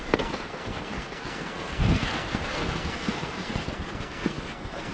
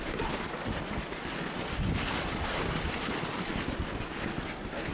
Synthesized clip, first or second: first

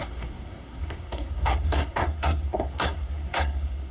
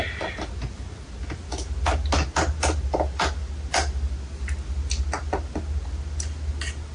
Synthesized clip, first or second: first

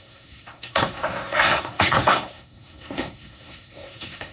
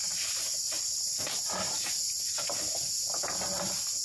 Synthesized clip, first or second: first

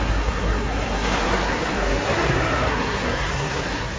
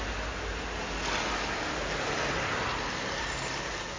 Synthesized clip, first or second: first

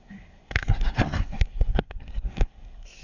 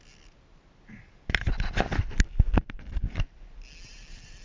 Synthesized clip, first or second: first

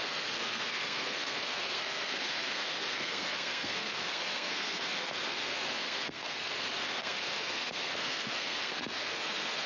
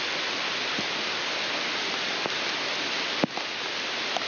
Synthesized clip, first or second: first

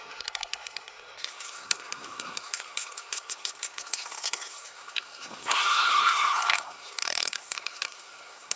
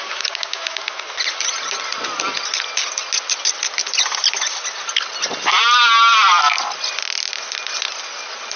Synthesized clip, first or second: first